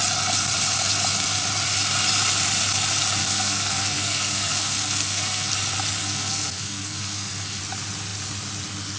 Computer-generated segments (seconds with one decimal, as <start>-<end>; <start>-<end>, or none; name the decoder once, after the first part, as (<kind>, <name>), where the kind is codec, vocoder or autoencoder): 3.2-5.5 (codec, SNAC); 6.0-7.6